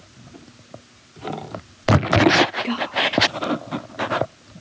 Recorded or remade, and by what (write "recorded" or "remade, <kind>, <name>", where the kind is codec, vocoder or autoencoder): recorded